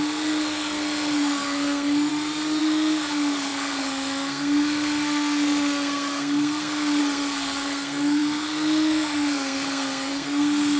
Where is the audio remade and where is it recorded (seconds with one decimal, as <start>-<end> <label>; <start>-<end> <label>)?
0.0-2.1 remade; 2.1-2.6 recorded; 2.6-10.8 remade